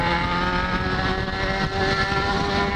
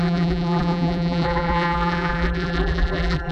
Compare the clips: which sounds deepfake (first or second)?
second